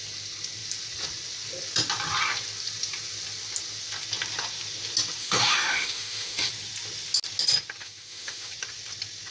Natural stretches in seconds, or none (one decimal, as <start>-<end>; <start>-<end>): 0.0-5.2; 6.5-7.8; 8.5-9.3